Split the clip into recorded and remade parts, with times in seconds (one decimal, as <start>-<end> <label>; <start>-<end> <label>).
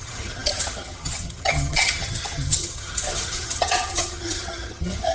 0.0-5.1 remade